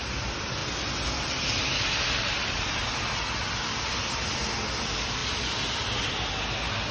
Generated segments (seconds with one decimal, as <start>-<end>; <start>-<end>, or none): none